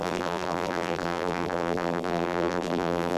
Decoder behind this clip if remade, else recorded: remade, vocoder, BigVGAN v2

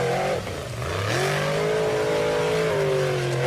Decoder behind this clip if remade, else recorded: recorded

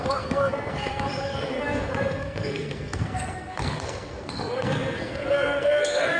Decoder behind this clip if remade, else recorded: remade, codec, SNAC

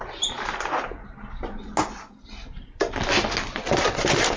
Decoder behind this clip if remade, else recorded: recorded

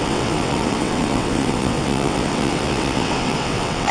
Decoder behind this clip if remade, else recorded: remade, vocoder, WaveNeXt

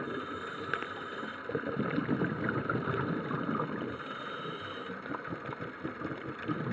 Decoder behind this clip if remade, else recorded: recorded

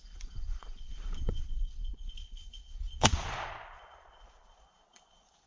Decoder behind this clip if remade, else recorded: remade, vocoder, Vocos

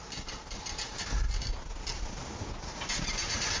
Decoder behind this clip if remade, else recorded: recorded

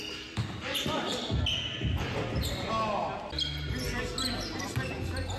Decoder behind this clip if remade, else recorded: recorded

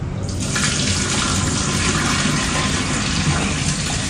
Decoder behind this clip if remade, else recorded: recorded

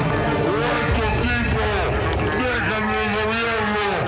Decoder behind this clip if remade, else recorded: recorded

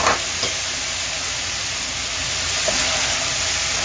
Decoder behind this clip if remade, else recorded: recorded